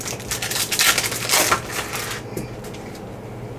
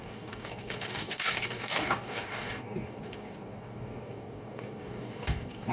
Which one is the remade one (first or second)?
second